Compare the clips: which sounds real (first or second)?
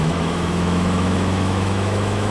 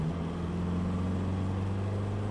second